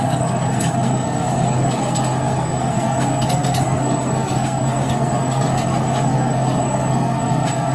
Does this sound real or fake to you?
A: fake